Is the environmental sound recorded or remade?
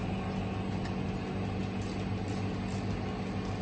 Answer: recorded